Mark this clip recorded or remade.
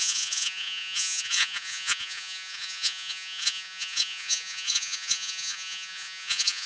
remade